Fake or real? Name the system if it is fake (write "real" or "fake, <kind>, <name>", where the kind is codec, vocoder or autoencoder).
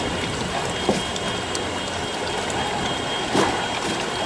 real